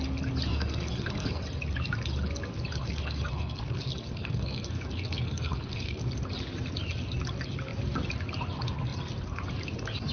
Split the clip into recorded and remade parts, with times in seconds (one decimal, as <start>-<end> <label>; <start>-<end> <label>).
0.0-0.5 recorded; 0.5-1.4 remade; 1.4-2.8 recorded; 2.8-6.0 remade; 6.0-10.1 recorded